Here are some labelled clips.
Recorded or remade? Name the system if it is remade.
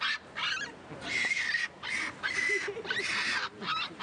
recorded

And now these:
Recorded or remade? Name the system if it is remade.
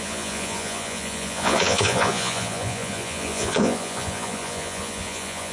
remade, vocoder, Vocos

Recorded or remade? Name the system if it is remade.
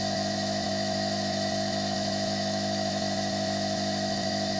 remade, autoencoder, DAC-VAE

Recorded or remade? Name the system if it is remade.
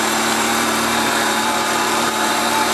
remade, vocoder, BigVGAN v2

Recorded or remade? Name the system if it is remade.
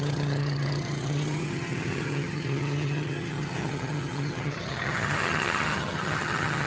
remade, vocoder, HiFi-GAN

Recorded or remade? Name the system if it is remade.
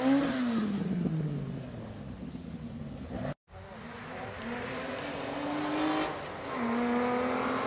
recorded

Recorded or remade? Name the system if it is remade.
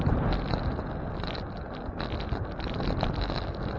recorded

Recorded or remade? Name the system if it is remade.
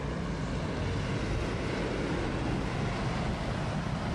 recorded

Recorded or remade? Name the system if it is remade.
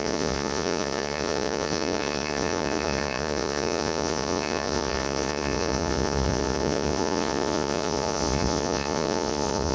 remade, vocoder, Vocos